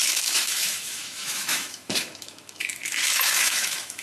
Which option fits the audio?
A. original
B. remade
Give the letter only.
B